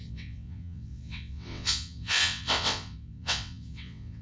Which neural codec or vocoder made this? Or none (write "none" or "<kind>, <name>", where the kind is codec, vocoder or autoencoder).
vocoder, WaveNeXt